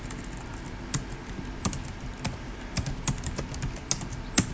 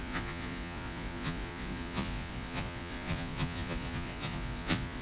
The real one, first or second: first